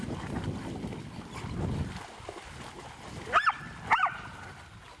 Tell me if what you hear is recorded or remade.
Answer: recorded